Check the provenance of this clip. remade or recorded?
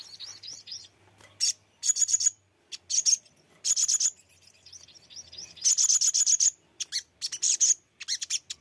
recorded